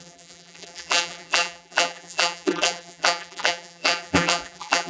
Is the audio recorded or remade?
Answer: remade